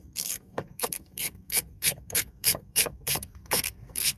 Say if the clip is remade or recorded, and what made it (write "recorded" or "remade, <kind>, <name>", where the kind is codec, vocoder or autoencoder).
remade, codec, SNAC